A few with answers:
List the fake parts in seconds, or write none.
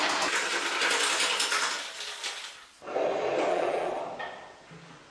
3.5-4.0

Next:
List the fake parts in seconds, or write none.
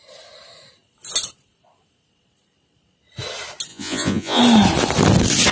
3.7-4.4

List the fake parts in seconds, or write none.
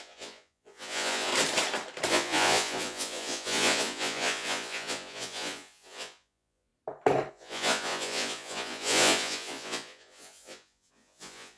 0.0-1.3; 2.1-6.7; 7.3-11.6